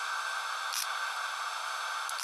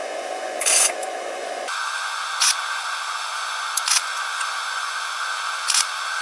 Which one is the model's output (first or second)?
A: second